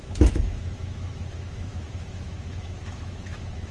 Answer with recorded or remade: remade